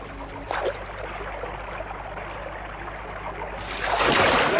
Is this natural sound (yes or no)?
yes